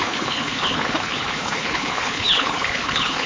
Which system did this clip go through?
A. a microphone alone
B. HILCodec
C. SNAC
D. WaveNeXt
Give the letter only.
B